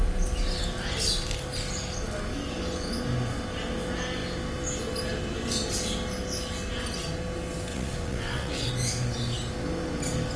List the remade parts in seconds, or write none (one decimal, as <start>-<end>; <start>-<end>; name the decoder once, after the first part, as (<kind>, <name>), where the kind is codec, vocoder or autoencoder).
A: 7.7-8.7 (vocoder, WaveNeXt)